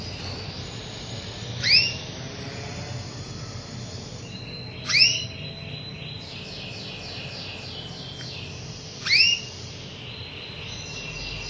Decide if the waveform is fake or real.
real